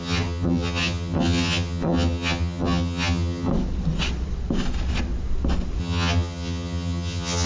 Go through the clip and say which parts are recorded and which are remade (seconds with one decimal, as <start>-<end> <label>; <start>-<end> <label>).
0.0-3.5 remade; 3.5-5.8 recorded; 5.8-7.5 remade